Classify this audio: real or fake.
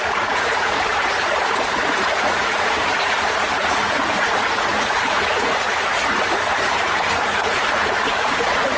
fake